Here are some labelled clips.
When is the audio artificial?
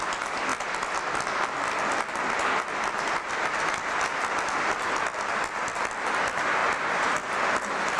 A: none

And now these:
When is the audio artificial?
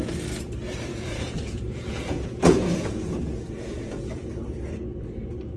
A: 0.9-4.3 (vocoder, Vocos)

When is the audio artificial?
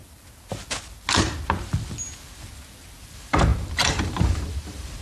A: 3.0-5.0 (vocoder, BigVGAN v2)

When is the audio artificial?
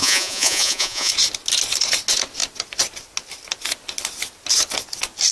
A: 0.0-1.1 (vocoder, Vocos)